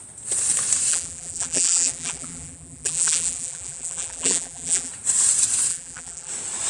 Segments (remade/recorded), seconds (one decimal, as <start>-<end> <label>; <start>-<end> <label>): 0.0-0.9 recorded; 0.9-4.9 remade; 4.9-5.7 recorded; 5.7-6.3 remade; 6.3-6.7 recorded